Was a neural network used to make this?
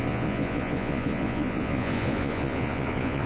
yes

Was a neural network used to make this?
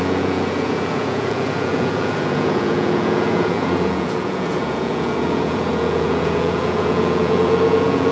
yes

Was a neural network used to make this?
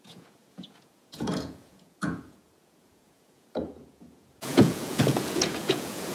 yes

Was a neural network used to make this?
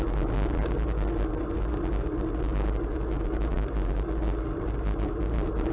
no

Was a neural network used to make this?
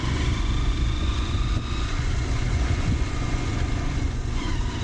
yes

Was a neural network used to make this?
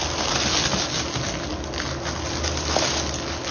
no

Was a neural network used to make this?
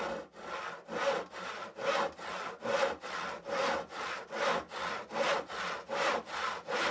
no